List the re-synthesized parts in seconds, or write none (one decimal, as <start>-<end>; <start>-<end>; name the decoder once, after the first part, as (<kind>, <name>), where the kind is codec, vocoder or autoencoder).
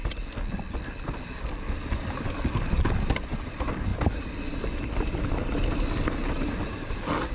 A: none